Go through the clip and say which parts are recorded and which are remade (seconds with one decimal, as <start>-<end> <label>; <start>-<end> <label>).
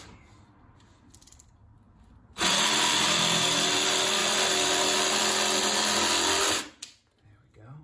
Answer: 0.0-7.8 recorded